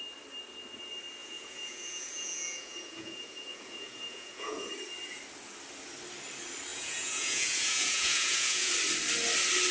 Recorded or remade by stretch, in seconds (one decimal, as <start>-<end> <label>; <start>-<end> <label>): 0.0-1.2 recorded; 1.2-4.7 remade; 4.7-6.7 recorded; 6.7-8.7 remade; 8.7-9.7 recorded